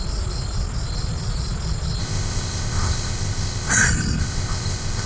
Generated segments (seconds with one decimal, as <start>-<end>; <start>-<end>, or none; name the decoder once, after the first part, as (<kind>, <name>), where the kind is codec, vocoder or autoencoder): 2.0-3.7 (codec, ZipCodec); 4.2-5.1